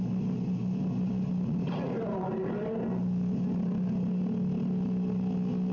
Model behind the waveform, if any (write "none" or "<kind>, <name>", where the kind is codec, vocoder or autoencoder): none